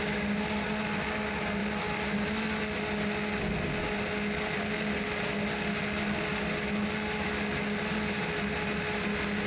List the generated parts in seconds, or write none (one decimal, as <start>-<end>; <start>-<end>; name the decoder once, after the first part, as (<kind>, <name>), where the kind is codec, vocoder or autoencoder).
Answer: none